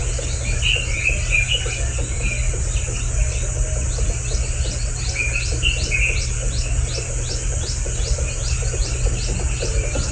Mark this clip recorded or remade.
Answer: recorded